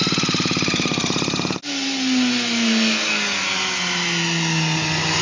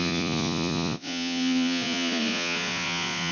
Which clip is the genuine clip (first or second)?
first